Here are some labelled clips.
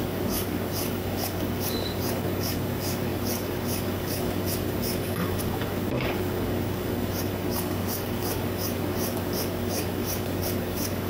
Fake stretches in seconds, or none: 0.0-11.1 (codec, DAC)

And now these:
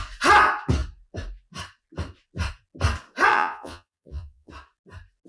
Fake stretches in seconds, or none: 3.3-4.5 (vocoder, Vocos)

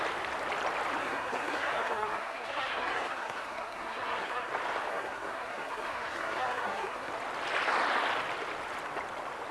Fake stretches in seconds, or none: 1.0-4.5 (codec, SNAC); 4.9-7.1

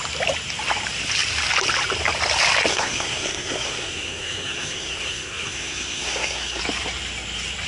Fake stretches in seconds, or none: 2.7-6.6 (codec, SNAC)

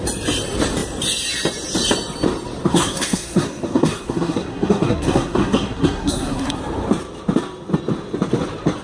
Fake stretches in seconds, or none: 2.7-6.6 (codec, SNAC)